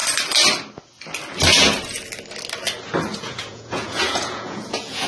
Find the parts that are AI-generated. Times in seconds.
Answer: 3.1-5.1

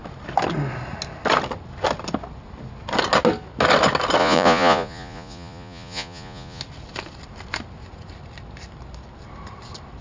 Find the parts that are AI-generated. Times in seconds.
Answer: 4.2-6.6

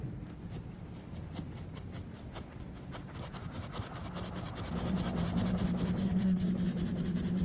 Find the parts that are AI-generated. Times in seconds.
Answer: 6.0-6.5